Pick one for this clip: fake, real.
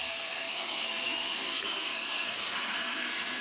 fake